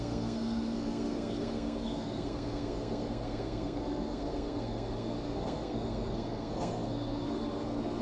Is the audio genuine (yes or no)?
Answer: no